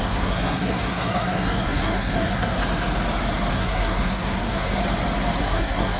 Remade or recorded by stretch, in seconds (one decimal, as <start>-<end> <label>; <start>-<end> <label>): 0.0-2.6 remade; 2.6-3.5 recorded; 3.5-4.8 remade; 4.8-5.4 recorded; 5.4-6.0 remade